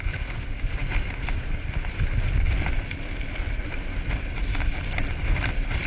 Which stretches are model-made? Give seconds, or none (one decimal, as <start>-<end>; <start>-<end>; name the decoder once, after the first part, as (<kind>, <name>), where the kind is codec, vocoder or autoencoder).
none